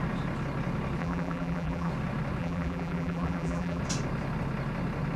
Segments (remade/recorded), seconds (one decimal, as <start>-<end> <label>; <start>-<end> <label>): 0.0-1.0 recorded; 1.0-1.9 remade; 1.9-2.4 recorded; 2.4-3.8 remade; 3.8-5.2 recorded